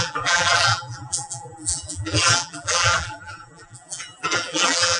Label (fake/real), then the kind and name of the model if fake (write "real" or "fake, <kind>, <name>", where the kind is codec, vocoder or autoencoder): fake, vocoder, BigVGAN v2